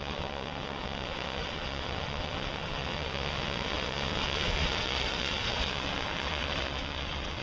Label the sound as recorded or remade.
remade